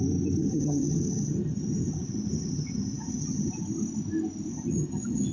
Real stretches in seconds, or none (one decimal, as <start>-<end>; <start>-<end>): 0.0-0.4; 3.6-4.5